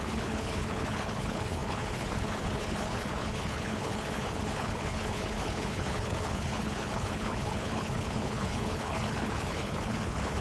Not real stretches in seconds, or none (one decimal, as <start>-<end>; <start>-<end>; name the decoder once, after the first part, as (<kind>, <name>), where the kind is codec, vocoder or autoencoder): 0.0-10.4 (codec, HILCodec)